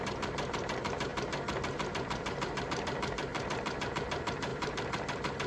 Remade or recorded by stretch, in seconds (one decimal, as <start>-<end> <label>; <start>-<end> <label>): 0.0-5.5 remade